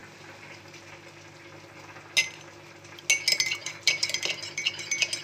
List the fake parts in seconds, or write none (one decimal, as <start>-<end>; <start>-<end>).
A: 3.6-4.8